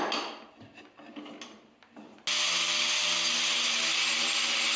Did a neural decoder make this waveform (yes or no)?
no